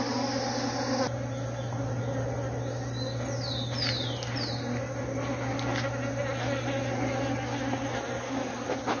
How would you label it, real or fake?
real